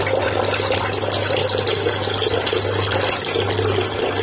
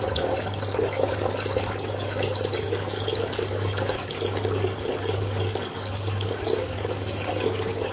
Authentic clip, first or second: first